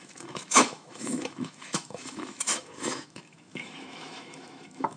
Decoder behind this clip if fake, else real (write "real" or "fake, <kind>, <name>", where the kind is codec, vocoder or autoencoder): fake, autoencoder, DAC-VAE